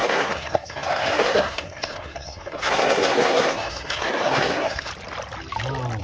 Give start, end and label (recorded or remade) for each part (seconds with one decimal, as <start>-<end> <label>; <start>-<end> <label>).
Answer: 0.0-4.9 remade; 4.9-6.0 recorded

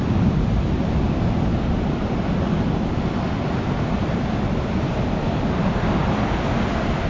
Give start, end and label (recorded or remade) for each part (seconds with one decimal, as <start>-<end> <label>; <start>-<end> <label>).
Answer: 0.0-7.1 recorded

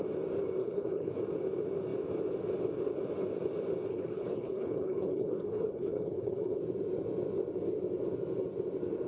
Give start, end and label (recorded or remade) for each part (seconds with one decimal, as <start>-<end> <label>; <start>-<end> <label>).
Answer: 0.0-0.6 recorded; 0.6-1.1 remade; 1.1-3.9 recorded; 3.9-6.6 remade; 6.6-9.1 recorded

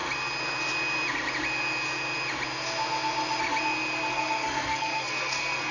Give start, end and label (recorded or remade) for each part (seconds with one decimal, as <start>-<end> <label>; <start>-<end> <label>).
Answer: 0.0-4.1 recorded; 4.1-5.7 remade

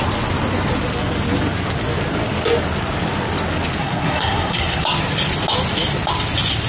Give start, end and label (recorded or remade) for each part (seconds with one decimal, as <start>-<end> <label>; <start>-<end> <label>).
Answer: 0.0-3.8 recorded; 3.8-4.8 remade; 4.8-6.7 recorded

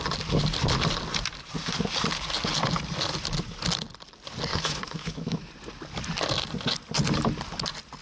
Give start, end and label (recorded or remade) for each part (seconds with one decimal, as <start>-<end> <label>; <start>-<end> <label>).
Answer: 0.0-4.5 recorded; 4.5-5.5 remade; 5.5-8.0 recorded